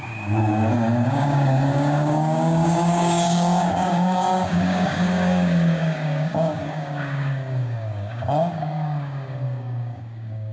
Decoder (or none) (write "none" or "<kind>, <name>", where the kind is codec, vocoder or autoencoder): codec, DAC